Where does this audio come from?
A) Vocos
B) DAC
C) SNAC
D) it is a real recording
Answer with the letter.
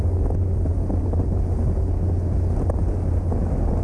D